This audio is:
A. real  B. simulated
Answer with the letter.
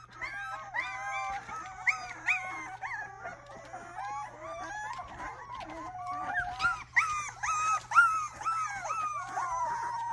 A